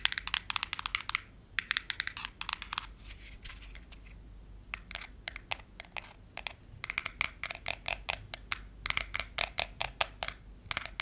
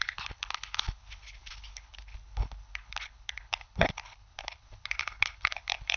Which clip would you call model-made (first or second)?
second